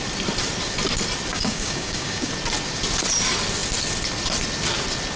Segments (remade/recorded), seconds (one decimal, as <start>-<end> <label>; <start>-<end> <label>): 0.0-1.3 recorded; 1.3-2.3 remade; 2.3-5.2 recorded